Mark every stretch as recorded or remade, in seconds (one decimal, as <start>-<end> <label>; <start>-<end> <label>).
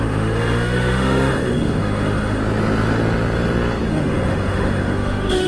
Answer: 0.0-2.4 remade; 2.4-3.9 recorded; 3.9-5.5 remade